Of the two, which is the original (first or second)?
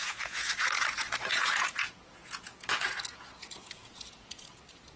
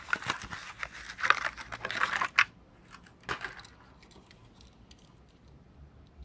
second